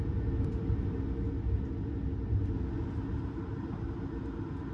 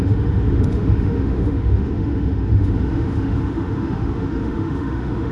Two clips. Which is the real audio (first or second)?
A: first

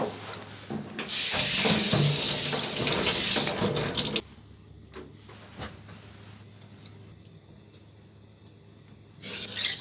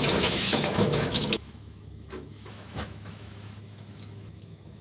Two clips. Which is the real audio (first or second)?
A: first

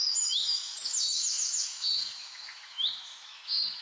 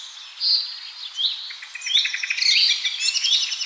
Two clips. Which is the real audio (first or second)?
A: second